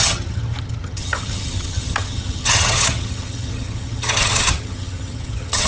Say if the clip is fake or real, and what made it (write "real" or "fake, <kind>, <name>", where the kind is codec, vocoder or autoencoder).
fake, vocoder, HiFi-GAN